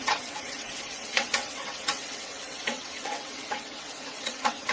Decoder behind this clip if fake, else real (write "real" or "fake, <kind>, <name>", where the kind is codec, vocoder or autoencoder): fake, vocoder, WaveNeXt